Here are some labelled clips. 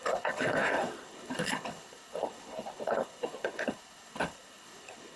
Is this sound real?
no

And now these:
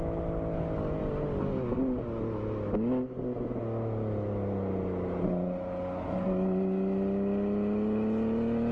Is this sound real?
yes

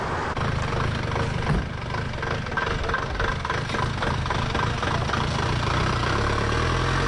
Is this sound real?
yes